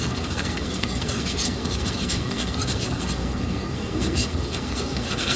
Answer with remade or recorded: remade